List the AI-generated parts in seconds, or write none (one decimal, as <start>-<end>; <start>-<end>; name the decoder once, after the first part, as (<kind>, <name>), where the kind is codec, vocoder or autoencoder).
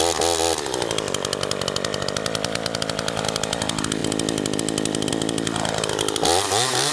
none